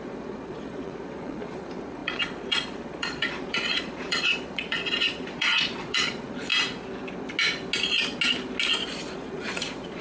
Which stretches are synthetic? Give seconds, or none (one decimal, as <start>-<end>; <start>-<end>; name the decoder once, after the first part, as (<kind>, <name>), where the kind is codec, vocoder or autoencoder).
0.0-6.5 (vocoder, Vocos); 9.1-10.0